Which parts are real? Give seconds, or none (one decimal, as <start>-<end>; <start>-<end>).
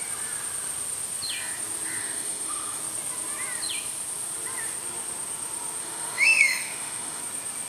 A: 0.0-2.0; 2.8-5.8; 7.2-7.7